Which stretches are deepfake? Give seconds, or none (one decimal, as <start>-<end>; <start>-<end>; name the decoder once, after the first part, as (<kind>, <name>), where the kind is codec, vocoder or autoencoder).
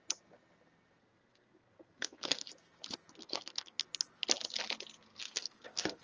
1.0-2.5 (codec, SNAC); 3.2-3.8; 5.1-6.0